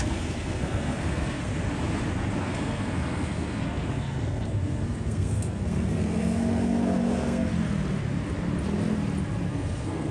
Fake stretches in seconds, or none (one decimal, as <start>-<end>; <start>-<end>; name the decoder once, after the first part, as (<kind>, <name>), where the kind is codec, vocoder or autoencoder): 0.0-1.5 (codec, SNAC); 2.4-7.5; 9.5-10.1